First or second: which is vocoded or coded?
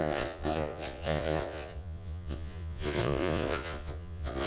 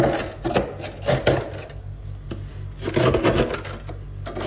first